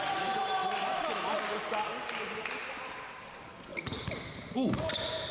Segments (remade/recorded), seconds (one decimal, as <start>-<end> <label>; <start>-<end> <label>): 0.0-3.7 remade; 3.7-4.2 recorded; 4.2-5.3 remade